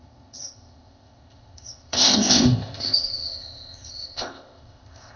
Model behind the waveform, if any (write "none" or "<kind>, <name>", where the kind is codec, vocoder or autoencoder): codec, ZipCodec